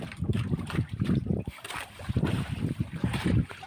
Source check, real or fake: fake